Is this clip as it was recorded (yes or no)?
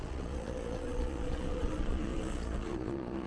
no